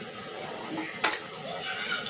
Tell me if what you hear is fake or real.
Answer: real